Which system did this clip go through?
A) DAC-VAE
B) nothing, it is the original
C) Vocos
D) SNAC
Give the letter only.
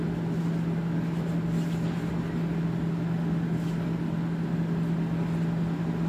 B